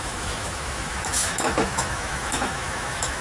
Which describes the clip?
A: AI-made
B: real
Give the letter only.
A